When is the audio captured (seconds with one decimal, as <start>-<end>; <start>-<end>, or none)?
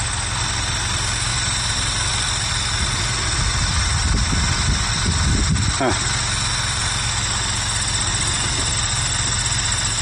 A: 0.0-1.3; 2.5-8.1; 8.7-10.0